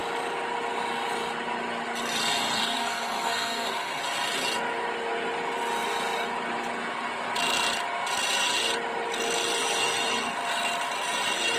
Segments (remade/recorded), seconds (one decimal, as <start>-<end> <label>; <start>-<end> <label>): 0.0-2.6 recorded; 2.6-4.0 remade; 4.0-11.6 recorded

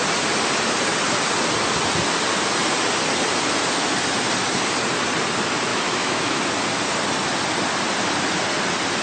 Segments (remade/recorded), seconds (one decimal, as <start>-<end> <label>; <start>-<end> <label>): 0.0-5.7 recorded; 5.7-6.4 remade; 6.4-9.0 recorded

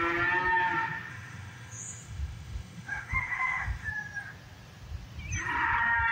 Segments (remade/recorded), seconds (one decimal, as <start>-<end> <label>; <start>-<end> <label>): 0.0-1.1 recorded; 1.1-3.9 remade; 3.9-6.1 recorded

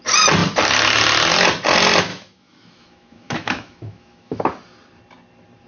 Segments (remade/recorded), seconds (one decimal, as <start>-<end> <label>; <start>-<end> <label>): 0.0-2.1 recorded; 2.1-4.4 remade; 4.4-5.7 recorded